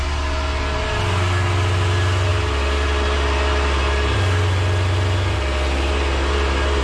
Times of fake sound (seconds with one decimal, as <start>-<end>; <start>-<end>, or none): none